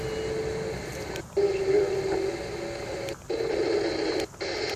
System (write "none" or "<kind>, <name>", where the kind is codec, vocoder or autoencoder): none